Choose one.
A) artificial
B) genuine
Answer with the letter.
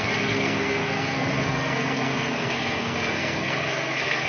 A